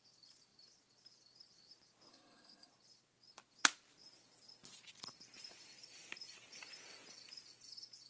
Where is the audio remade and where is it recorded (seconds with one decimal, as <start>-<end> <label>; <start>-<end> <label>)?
0.0-2.1 recorded; 2.1-2.7 remade; 2.7-8.1 recorded